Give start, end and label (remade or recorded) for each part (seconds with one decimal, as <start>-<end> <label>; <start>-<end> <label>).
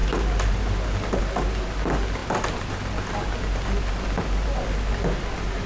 0.0-5.7 recorded